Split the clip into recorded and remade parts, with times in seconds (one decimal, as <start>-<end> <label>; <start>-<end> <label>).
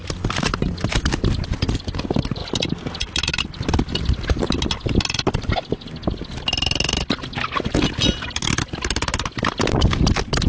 0.0-10.5 recorded